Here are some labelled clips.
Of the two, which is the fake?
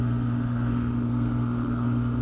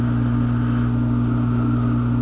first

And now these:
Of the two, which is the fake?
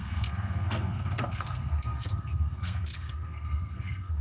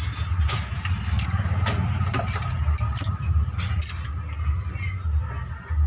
first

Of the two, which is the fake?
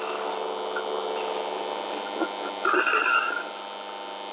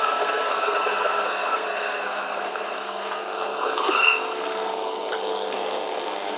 second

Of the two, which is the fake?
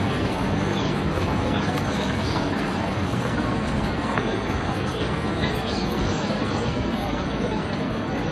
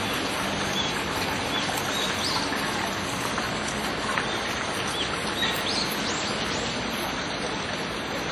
first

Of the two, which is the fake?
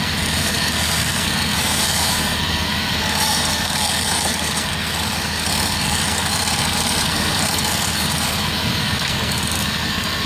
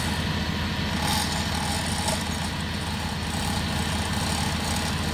first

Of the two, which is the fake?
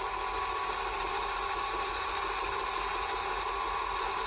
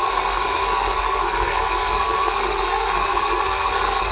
second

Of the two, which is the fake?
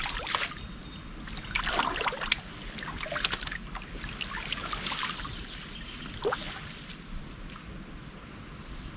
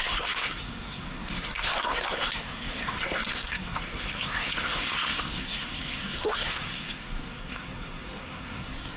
second